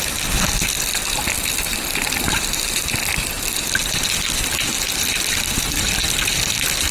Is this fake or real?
real